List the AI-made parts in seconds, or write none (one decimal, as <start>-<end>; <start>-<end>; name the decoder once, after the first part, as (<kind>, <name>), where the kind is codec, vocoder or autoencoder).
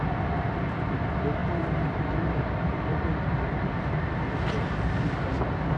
1.4-4.1 (vocoder, BigVGAN v2)